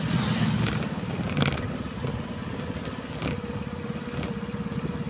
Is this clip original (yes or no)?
yes